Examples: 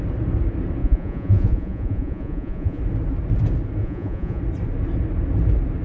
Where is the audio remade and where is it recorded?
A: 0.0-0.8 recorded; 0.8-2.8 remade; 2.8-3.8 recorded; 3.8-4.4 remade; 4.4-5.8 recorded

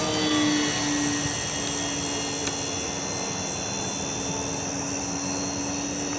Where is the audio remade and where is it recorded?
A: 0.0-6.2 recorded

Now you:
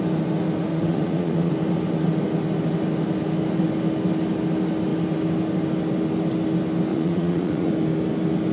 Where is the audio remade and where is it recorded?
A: 0.0-0.7 recorded; 0.7-1.5 remade; 1.5-6.9 recorded; 6.9-7.7 remade; 7.7-8.5 recorded

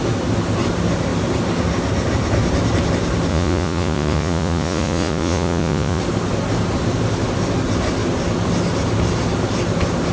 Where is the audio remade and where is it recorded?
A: 0.0-3.3 recorded; 3.3-6.0 remade; 6.0-10.1 recorded

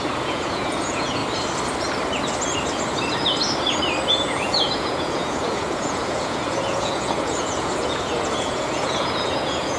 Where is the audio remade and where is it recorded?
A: 0.0-1.2 remade; 1.2-4.1 recorded; 4.1-9.8 remade